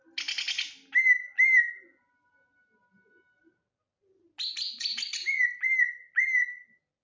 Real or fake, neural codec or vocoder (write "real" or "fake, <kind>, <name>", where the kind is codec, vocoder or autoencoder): real